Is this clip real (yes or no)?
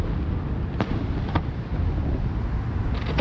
yes